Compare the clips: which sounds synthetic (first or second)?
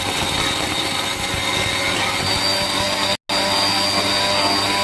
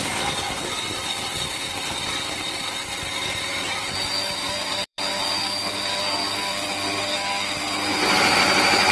second